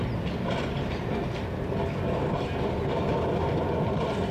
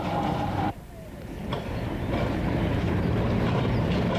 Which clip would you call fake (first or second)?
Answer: second